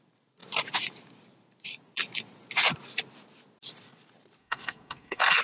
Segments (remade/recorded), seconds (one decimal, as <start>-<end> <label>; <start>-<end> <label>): 0.0-4.4 recorded; 4.4-5.4 remade